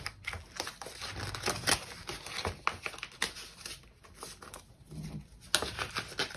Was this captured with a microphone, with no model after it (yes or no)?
yes